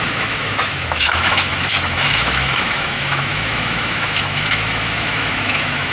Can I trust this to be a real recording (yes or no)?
no